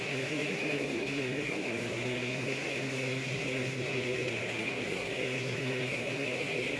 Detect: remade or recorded remade